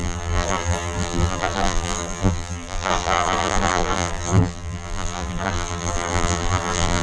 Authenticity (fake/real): fake